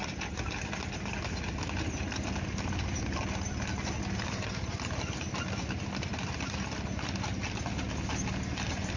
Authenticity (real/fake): real